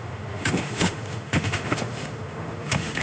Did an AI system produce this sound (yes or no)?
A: yes